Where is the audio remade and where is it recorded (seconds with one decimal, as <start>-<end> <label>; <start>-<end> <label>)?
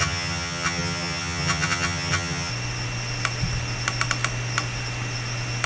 0.0-2.5 remade; 2.5-5.7 recorded